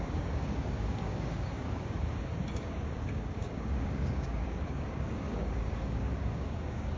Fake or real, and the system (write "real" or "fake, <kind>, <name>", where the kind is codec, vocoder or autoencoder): fake, codec, DAC